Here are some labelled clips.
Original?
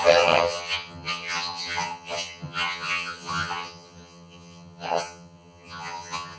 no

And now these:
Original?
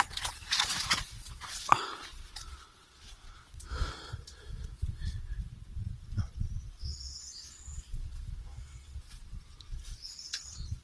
no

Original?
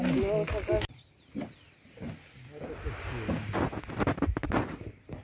yes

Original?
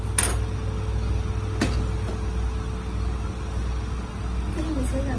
yes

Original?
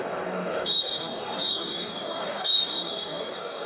no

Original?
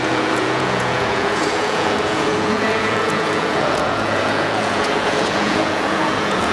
no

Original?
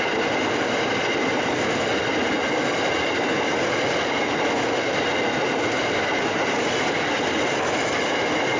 yes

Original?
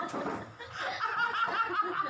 yes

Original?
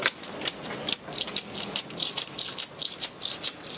yes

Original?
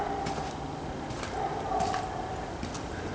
yes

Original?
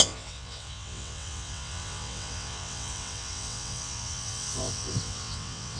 no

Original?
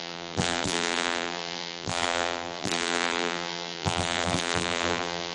no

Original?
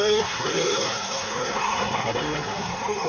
no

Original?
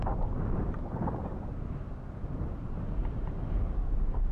yes